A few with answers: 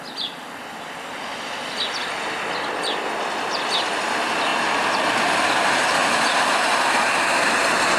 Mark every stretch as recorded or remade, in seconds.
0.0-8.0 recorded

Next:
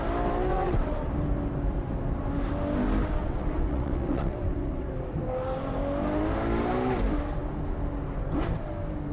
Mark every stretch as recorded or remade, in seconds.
0.0-0.5 recorded; 0.5-1.1 remade; 1.1-3.2 recorded; 3.2-4.9 remade; 4.9-9.1 recorded

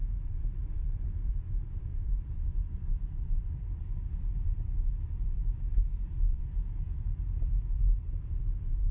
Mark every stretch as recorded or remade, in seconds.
0.0-0.5 recorded; 0.5-1.3 remade; 1.3-1.9 recorded; 1.9-4.3 remade; 4.3-5.9 recorded; 5.9-6.4 remade; 6.4-8.9 recorded

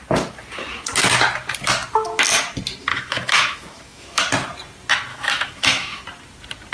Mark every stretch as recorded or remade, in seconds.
0.0-2.9 recorded; 2.9-4.2 remade; 4.2-5.1 recorded; 5.1-6.0 remade; 6.0-6.7 recorded

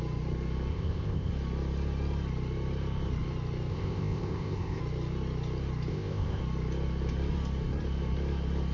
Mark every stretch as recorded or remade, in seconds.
0.0-0.7 recorded; 0.7-1.3 remade; 1.3-3.7 recorded; 3.7-4.8 remade; 4.8-5.9 recorded; 5.9-6.4 remade; 6.4-8.7 recorded

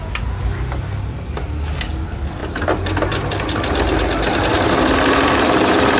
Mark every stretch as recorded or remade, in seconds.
0.0-6.0 recorded

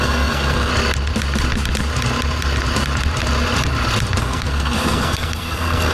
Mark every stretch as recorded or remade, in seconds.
0.0-0.7 remade; 0.7-4.2 recorded; 4.2-5.9 remade